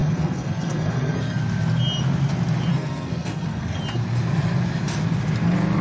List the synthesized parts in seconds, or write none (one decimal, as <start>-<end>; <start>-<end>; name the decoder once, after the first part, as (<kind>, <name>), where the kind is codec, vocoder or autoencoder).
0.0-1.4 (codec, SNAC); 2.7-3.8